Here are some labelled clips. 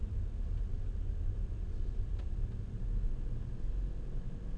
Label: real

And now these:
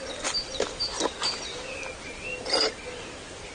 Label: real